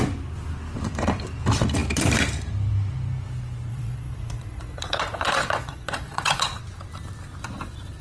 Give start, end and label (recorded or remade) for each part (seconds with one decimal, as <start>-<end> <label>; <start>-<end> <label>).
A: 0.0-3.7 recorded; 3.7-6.6 remade; 6.6-8.0 recorded

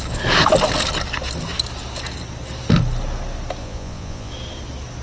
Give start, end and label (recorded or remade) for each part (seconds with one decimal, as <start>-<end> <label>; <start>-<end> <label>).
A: 0.0-3.6 recorded; 3.6-4.3 remade; 4.3-5.0 recorded

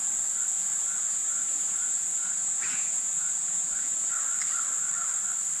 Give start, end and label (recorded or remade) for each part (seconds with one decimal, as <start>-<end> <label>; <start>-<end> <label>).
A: 0.0-0.7 recorded; 0.7-4.1 remade; 4.1-5.6 recorded

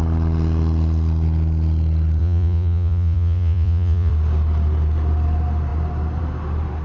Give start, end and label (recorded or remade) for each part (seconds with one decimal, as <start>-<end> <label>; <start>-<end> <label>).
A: 0.0-2.2 recorded; 2.2-4.1 remade; 4.1-6.8 recorded

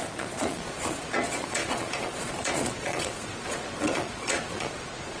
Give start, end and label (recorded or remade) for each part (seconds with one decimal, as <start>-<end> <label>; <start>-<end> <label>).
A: 0.0-5.2 remade

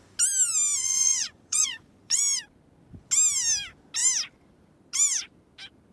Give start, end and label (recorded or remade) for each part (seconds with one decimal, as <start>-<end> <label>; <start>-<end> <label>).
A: 0.0-0.8 recorded; 0.8-2.2 remade; 2.2-5.9 recorded

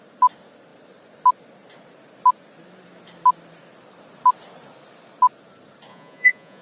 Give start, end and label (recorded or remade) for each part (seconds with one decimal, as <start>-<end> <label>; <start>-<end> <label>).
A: 0.0-5.9 recorded; 5.9-6.6 remade